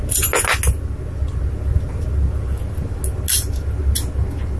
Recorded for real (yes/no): yes